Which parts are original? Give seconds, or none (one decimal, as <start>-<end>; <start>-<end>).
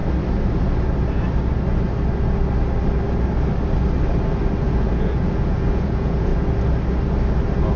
0.0-4.6; 6.3-7.8